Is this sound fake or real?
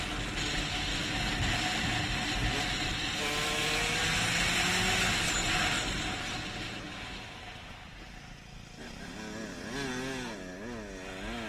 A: real